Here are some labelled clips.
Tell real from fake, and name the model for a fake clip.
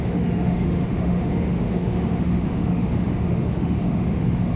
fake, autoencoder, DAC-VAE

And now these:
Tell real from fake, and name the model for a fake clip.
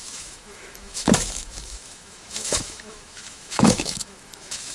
fake, autoencoder, DAC-VAE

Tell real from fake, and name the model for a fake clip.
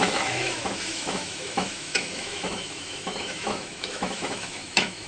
fake, autoencoder, DAC-VAE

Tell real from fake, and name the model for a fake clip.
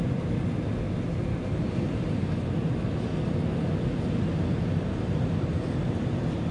real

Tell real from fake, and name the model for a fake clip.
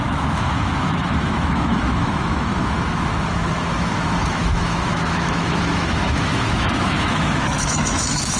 fake, autoencoder, DAC-VAE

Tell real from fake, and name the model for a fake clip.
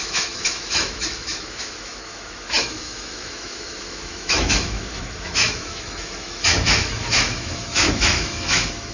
fake, autoencoder, DAC-VAE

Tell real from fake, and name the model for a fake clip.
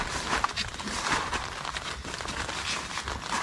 real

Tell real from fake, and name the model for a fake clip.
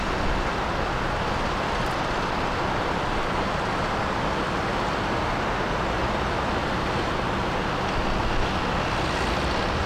real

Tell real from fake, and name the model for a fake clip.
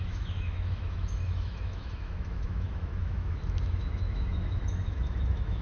fake, autoencoder, DAC-VAE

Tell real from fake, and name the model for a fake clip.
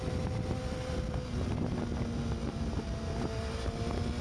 real